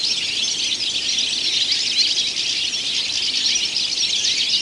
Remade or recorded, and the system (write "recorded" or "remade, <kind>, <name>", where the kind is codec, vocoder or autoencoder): recorded